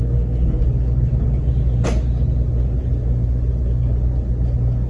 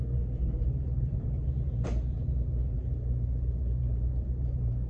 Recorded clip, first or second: first